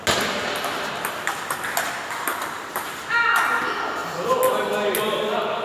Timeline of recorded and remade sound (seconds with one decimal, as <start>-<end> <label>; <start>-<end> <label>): 0.0-2.3 recorded; 2.3-3.6 remade; 3.6-5.6 recorded